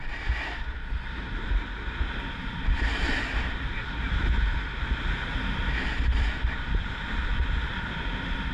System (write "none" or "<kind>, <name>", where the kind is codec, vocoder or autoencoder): none